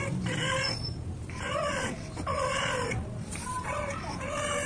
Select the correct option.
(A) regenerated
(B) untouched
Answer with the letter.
A